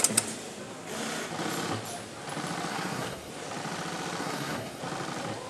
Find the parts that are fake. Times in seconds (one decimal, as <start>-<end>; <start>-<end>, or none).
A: 2.7-3.3; 4.2-4.8